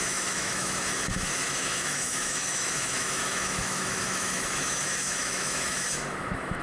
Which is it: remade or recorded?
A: remade